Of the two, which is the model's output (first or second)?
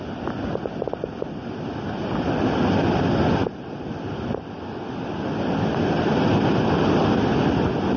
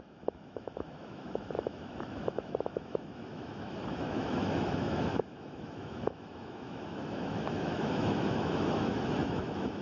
second